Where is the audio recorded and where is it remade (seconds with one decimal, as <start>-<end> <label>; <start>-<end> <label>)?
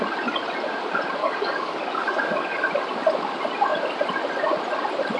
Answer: 0.0-1.2 recorded; 1.2-2.7 remade; 2.7-5.2 recorded